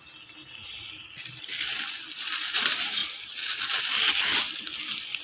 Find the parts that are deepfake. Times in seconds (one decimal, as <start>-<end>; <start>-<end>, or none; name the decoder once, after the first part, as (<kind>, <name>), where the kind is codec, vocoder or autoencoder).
none